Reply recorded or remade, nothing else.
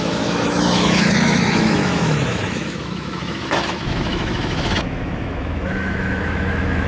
remade